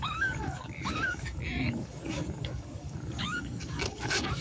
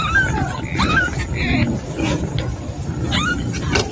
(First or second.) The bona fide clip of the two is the second